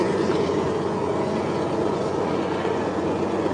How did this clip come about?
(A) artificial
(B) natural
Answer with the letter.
A